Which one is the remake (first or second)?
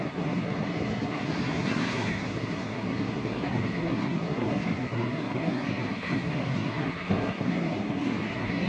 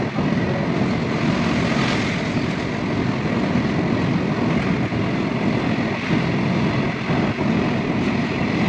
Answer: first